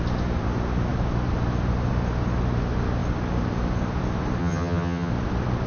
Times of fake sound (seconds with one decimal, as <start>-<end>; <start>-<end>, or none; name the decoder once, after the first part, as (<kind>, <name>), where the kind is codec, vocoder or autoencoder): 4.4-5.1 (vocoder, HiFi-GAN)